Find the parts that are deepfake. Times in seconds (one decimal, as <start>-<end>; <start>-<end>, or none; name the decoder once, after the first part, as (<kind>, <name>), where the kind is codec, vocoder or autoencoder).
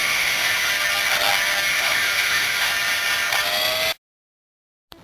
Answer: 0.0-0.7 (autoencoder, DAC-VAE); 1.7-2.7